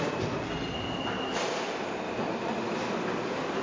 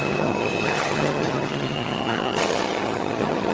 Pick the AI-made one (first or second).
second